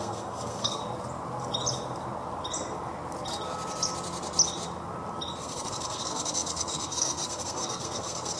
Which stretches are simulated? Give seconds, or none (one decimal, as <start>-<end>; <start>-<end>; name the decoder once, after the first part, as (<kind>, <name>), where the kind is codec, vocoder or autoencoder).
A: 0.0-0.8 (codec, SNAC); 5.4-8.4